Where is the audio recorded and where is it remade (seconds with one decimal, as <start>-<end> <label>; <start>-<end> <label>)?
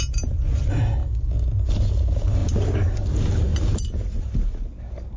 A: 0.0-5.2 recorded